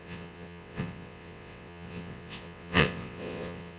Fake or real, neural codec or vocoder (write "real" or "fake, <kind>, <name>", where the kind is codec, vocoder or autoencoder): fake, vocoder, WaveNeXt